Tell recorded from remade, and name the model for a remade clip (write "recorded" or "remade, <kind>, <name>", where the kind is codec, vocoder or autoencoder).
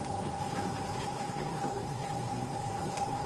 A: remade, codec, SNAC